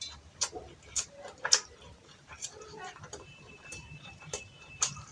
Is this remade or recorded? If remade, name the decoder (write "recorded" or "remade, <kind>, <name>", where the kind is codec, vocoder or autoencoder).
remade, vocoder, BigVGAN v2